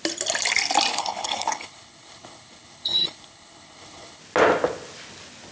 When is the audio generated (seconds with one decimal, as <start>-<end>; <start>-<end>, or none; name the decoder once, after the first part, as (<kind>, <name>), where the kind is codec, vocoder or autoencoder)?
0.9-4.2 (codec, HILCodec)